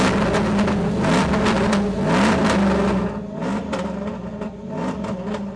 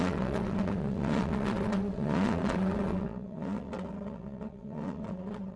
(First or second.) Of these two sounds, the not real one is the second